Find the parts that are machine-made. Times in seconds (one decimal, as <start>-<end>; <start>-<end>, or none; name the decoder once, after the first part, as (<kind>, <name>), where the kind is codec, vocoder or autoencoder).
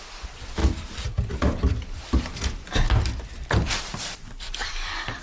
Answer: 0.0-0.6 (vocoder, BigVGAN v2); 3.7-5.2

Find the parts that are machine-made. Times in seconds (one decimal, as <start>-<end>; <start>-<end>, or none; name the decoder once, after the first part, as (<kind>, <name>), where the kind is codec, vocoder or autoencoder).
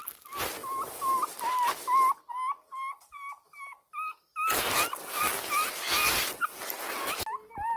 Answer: none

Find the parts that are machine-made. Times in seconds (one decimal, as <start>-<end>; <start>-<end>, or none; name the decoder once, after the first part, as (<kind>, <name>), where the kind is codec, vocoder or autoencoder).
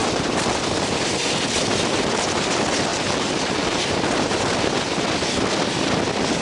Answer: 0.0-0.5 (vocoder, BigVGAN v2); 2.9-4.3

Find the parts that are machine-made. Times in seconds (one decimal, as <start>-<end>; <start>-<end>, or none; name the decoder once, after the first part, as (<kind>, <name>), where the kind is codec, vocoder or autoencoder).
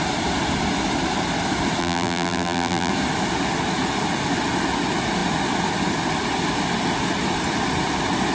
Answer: 1.8-2.9 (vocoder, BigVGAN v2)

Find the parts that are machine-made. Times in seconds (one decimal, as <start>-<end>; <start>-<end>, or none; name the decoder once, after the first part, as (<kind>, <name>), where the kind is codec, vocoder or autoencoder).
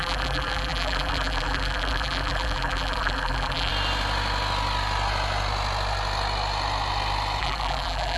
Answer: 0.0-3.7 (vocoder, BigVGAN v2); 7.4-8.2